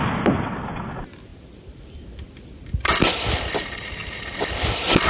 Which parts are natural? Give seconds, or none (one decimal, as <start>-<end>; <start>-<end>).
0.0-5.1

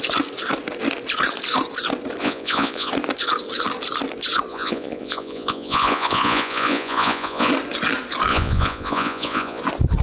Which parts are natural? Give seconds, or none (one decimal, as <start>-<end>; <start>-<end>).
0.0-2.2; 2.9-4.5; 7.5-8.3; 9.6-10.0

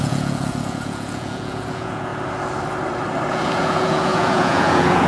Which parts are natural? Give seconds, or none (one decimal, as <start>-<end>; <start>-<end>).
2.1-3.3

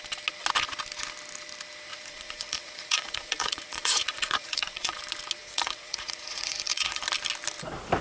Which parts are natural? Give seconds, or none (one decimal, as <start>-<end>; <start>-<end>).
0.0-1.9; 5.0-5.4; 7.0-8.0